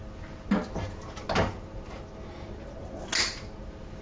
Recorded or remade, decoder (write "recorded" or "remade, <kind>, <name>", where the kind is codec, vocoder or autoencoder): recorded